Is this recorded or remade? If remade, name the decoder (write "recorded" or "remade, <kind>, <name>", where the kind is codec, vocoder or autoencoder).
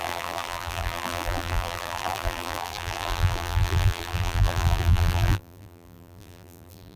remade, vocoder, BigVGAN v2